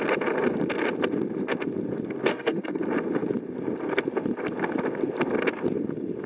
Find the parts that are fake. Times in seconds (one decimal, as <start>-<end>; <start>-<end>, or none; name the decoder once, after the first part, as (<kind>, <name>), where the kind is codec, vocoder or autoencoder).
2.3-2.8 (codec, SNAC)